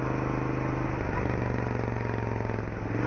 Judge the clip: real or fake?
real